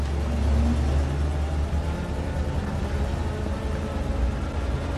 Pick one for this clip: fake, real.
real